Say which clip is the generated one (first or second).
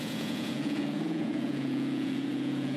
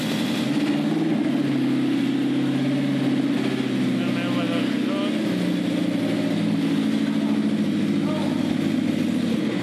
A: first